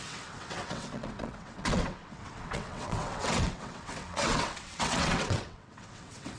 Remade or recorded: remade